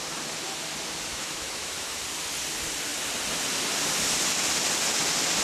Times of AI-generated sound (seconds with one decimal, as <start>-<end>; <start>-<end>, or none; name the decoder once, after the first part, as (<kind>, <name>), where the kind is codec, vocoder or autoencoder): 1.1-2.0 (autoencoder, DAC-VAE)